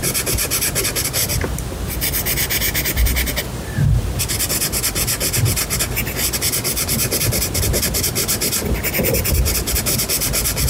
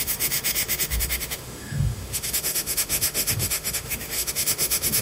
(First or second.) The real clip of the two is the first